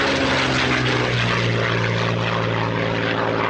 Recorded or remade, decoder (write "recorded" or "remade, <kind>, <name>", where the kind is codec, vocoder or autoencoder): recorded